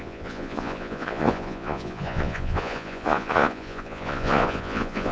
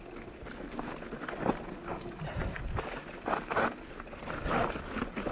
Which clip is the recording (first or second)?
second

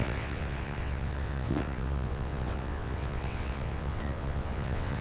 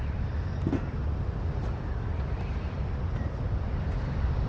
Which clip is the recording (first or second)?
second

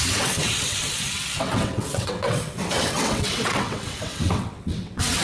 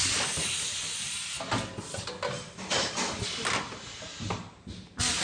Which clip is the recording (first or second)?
second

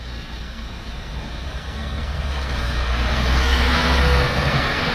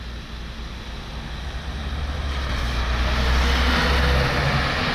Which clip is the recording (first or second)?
second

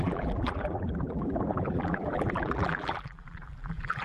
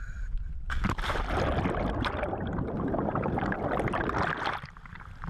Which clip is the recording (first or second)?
second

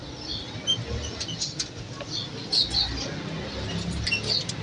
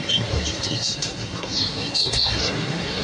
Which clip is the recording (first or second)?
first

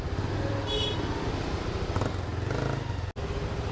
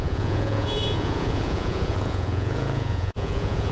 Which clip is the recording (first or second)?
first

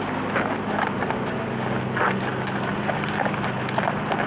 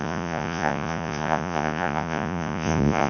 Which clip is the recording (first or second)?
first